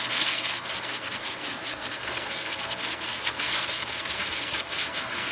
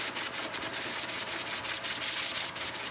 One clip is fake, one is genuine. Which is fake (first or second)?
first